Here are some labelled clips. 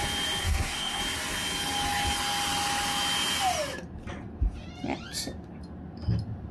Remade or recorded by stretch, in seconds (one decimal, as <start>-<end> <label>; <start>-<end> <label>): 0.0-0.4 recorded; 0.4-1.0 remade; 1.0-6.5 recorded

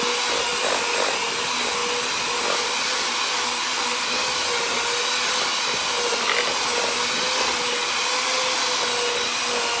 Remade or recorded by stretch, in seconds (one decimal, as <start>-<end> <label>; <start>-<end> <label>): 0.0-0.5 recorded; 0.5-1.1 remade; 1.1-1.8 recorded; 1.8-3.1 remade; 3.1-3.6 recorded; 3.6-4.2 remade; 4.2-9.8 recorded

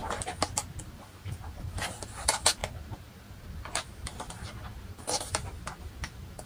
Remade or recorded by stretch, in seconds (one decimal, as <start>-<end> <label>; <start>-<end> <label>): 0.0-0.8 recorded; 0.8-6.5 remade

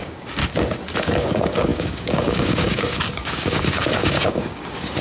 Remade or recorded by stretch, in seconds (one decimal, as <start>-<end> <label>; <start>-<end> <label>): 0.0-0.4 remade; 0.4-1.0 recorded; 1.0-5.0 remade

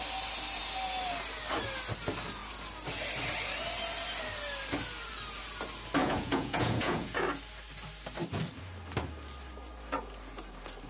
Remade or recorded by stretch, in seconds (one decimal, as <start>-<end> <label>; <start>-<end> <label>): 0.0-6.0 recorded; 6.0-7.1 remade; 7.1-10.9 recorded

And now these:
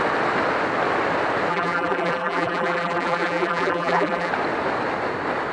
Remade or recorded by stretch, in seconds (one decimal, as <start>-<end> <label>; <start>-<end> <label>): 0.0-1.5 recorded; 1.5-4.3 remade; 4.3-5.5 recorded

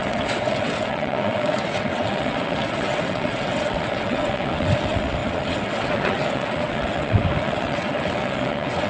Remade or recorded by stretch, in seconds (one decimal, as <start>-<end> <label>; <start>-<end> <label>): 0.0-8.9 remade